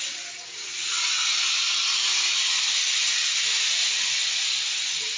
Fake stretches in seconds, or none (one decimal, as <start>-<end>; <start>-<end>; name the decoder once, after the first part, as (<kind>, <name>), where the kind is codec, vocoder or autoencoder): 0.0-1.2 (vocoder, WaveNeXt); 4.0-5.2